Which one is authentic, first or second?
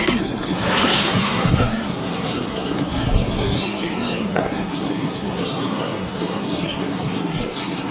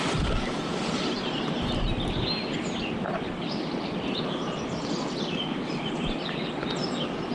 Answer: second